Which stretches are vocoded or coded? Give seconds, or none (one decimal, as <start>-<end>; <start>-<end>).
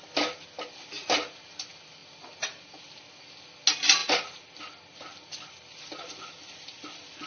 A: none